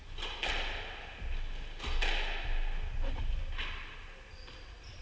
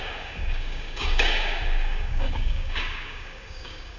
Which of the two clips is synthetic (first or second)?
second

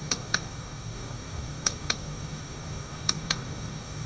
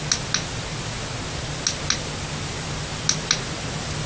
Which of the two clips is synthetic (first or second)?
first